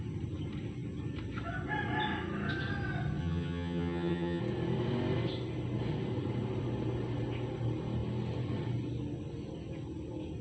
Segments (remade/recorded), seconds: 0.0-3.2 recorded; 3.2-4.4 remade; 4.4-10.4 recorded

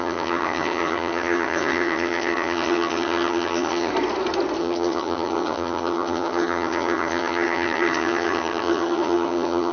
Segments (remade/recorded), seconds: 0.0-3.9 remade; 3.9-4.6 recorded; 4.6-9.7 remade

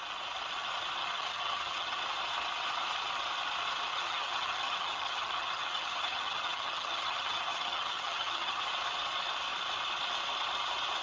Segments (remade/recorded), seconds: 0.0-1.0 recorded; 1.0-2.0 remade; 2.0-3.9 recorded; 3.9-8.6 remade; 8.6-11.0 recorded